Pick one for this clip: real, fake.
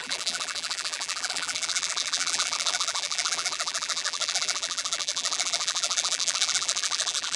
fake